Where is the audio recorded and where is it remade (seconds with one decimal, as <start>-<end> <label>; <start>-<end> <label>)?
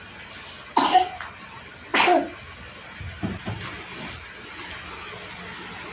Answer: 0.0-5.9 recorded